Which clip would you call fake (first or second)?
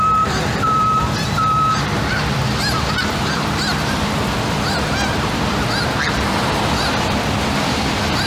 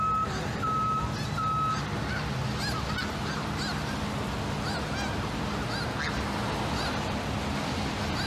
first